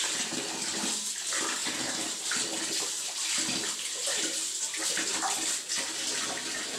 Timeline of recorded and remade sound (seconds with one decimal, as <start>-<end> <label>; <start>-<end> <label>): 0.0-6.8 recorded